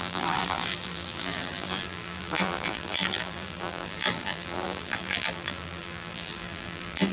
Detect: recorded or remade remade